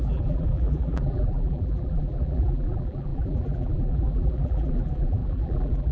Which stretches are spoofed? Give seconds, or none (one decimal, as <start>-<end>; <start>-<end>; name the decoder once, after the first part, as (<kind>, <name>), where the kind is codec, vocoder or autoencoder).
0.0-5.9 (vocoder, BigVGAN v2)